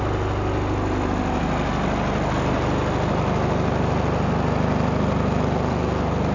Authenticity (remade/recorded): recorded